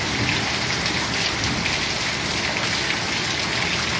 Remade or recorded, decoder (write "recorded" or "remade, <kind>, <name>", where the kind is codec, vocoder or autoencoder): recorded